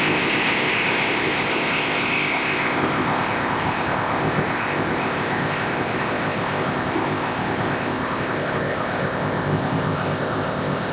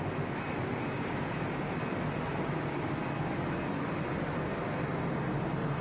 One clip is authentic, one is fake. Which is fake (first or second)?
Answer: first